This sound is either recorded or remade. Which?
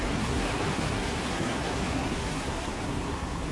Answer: remade